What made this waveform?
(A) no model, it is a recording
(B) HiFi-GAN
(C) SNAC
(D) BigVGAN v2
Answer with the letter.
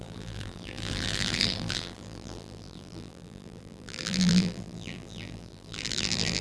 D